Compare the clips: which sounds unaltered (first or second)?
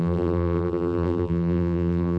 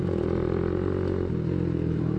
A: second